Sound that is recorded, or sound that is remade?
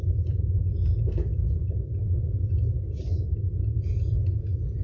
remade